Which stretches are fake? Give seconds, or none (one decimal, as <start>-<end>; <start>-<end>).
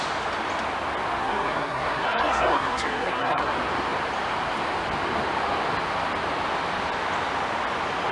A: 1.2-3.5